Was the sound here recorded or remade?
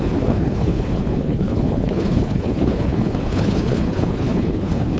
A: remade